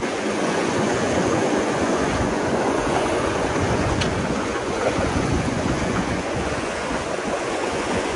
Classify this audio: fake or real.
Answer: fake